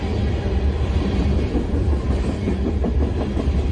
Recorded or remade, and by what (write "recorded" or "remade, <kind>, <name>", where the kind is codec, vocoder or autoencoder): recorded